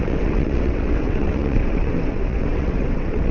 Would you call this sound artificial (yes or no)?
yes